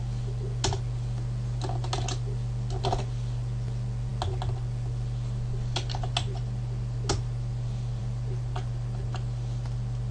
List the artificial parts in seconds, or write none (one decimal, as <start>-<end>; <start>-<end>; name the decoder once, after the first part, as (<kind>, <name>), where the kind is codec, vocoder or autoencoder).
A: none